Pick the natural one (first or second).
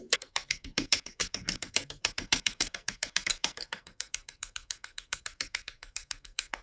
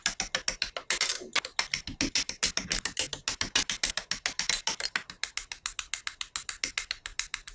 second